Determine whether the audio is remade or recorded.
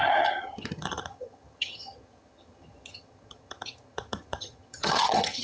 remade